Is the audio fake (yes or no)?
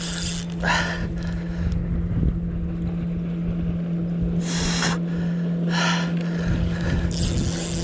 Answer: no